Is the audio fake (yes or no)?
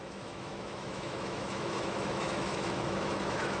yes